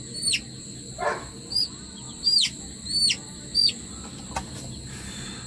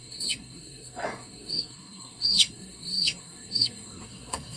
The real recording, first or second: first